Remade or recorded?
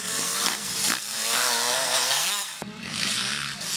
remade